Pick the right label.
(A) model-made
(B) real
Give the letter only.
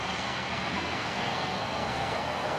A